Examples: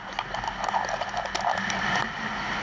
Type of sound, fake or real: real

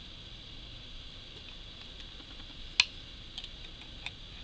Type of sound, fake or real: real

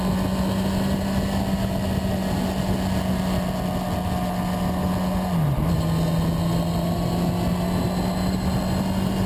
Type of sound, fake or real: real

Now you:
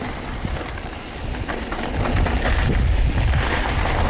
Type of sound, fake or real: real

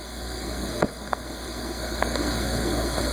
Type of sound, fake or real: fake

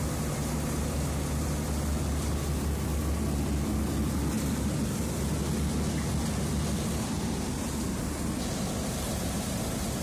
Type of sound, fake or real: real